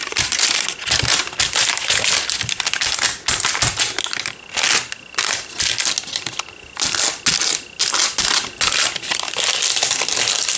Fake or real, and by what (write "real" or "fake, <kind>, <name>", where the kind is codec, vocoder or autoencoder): real